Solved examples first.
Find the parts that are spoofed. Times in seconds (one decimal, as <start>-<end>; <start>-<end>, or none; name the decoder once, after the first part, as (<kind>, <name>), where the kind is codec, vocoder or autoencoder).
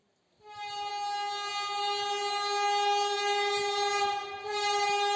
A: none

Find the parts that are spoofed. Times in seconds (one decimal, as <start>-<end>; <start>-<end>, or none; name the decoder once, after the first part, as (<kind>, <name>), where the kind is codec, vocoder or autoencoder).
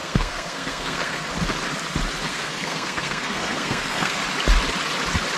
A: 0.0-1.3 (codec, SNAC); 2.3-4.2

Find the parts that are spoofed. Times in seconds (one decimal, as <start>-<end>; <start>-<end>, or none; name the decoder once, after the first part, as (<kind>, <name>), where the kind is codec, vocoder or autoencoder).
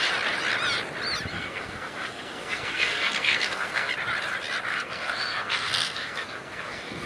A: 1.3-3.9 (codec, SNAC); 4.7-7.1